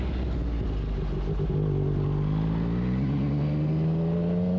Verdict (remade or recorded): recorded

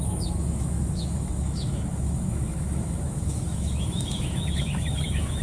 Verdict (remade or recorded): remade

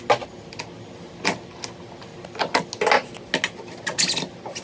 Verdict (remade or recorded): recorded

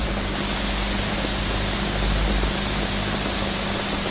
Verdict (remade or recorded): recorded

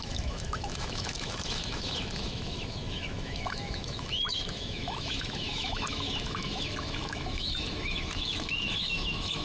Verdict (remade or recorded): remade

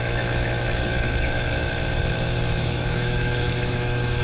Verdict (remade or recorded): remade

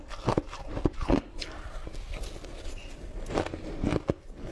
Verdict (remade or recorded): recorded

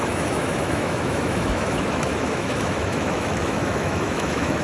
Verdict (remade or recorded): remade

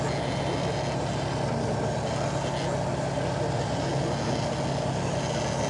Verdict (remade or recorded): recorded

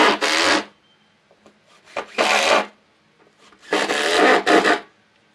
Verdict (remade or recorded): recorded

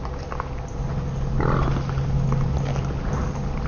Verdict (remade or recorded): recorded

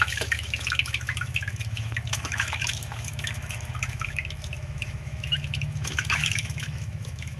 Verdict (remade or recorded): remade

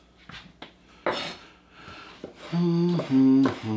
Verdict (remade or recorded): recorded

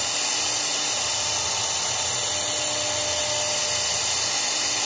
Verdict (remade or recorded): recorded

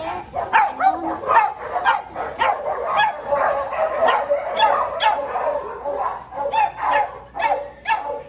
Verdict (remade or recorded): recorded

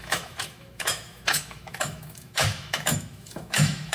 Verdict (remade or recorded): remade